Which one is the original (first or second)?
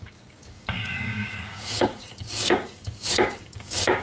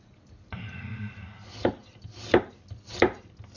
second